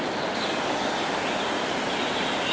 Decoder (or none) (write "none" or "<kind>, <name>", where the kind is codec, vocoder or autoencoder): none